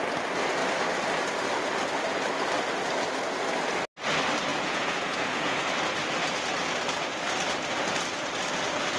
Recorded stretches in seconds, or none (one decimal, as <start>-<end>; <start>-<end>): 0.0-4.5; 5.6-9.0